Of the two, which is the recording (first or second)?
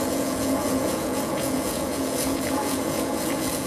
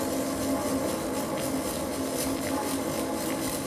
second